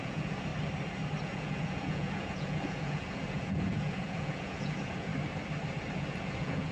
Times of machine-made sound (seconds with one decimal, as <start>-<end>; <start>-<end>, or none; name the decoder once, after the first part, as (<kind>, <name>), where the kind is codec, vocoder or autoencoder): 0.0-0.5 (vocoder, Vocos); 1.2-5.1; 5.9-6.7